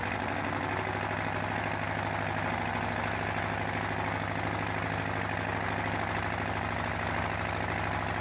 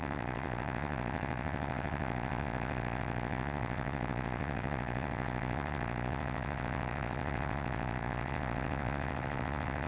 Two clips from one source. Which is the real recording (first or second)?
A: first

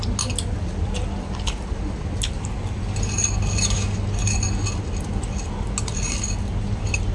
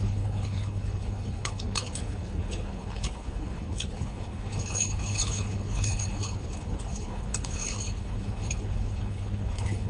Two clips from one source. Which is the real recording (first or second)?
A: first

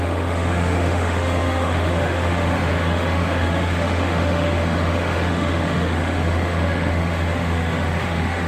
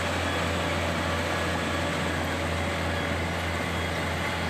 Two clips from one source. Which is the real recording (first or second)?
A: second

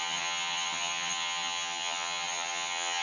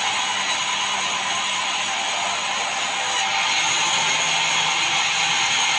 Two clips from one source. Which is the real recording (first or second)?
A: second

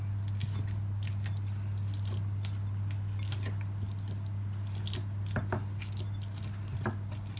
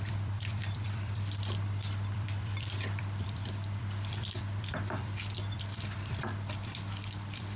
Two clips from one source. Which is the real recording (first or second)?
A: first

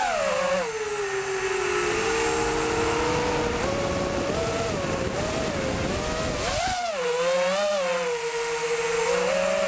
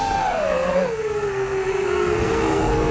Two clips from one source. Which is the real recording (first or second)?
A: first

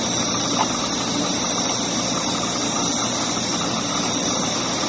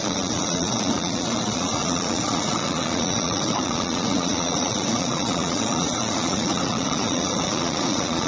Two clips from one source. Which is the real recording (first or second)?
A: first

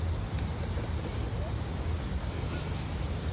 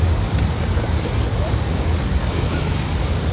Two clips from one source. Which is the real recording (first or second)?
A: first